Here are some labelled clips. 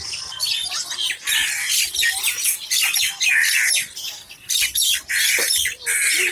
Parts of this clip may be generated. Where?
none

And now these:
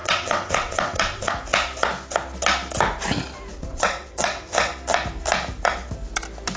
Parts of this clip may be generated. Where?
0.0-1.3 (vocoder, WaveNeXt); 3.5-4.7

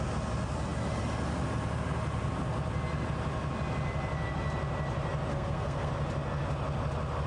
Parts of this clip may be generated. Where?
5.3-5.9 (codec, SNAC)

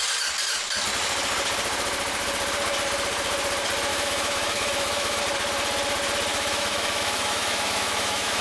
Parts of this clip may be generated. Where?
3.9-5.2 (autoencoder, DAC-VAE); 6.3-8.4